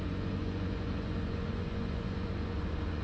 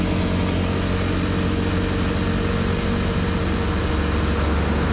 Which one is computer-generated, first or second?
first